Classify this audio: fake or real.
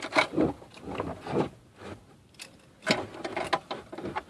real